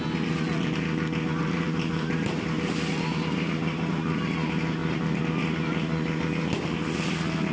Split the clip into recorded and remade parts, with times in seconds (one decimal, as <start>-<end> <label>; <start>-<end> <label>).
0.0-1.4 recorded; 1.4-4.2 remade; 4.2-7.5 recorded